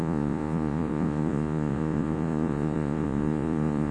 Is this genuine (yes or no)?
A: no